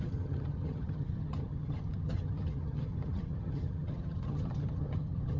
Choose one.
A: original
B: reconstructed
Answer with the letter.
B